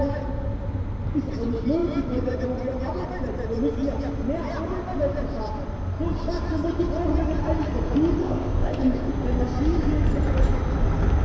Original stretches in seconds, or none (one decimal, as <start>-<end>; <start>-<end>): 0.0-8.2; 9.1-11.2